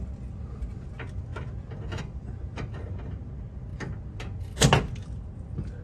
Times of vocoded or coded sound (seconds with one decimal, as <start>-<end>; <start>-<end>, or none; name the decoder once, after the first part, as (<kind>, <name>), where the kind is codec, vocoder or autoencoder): none